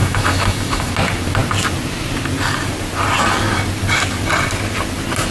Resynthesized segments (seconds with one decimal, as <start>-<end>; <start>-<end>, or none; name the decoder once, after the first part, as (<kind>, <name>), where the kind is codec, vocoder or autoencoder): 0.0-0.9 (autoencoder, DAC-VAE)